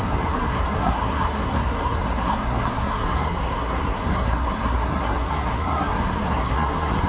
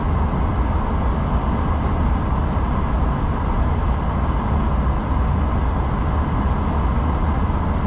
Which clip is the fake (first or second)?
first